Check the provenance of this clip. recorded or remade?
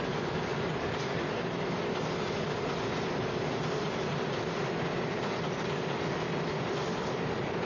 recorded